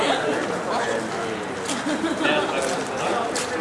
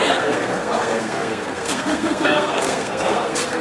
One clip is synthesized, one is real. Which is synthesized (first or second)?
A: second